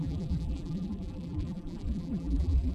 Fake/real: fake